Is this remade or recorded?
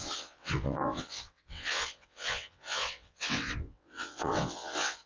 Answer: remade